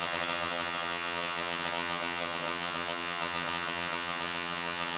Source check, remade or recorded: remade